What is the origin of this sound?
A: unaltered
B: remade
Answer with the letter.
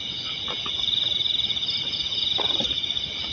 A